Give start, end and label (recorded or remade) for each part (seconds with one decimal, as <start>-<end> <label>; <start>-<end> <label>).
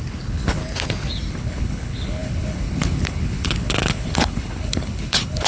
0.0-0.6 remade; 0.6-1.3 recorded; 1.3-5.5 remade